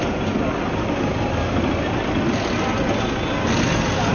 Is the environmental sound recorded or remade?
recorded